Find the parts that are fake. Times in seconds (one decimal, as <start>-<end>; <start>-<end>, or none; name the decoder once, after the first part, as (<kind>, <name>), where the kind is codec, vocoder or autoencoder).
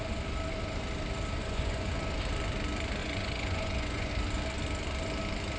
1.4-1.9 (vocoder, Vocos); 3.0-4.1